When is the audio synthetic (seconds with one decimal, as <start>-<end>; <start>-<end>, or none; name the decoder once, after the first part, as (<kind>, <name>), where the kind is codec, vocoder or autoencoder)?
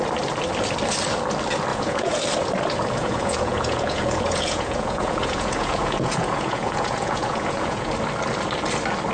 1.7-2.2 (vocoder, Vocos); 3.0-7.9